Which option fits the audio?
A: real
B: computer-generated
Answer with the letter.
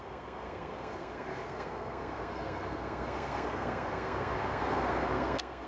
B